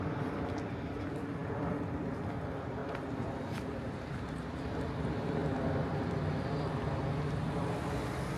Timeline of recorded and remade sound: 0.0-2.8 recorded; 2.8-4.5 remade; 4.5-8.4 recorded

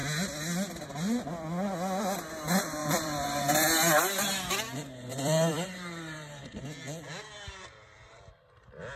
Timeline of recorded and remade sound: 0.0-2.8 recorded; 2.8-3.4 remade; 3.4-5.1 recorded; 5.1-6.4 remade; 6.4-9.0 recorded

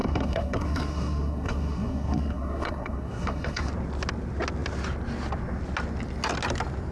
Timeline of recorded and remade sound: 0.0-3.7 remade; 3.7-6.9 recorded

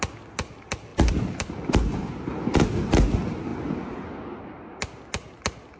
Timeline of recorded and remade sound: 0.0-5.8 recorded

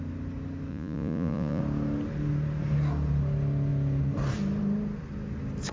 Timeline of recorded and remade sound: 0.0-0.7 recorded; 0.7-1.6 remade; 1.6-5.7 recorded

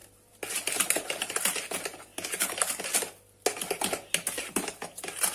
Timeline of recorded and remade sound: 0.0-5.3 recorded

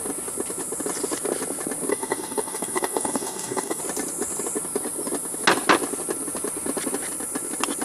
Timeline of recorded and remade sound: 0.0-1.9 recorded; 1.9-3.8 remade; 3.8-7.8 recorded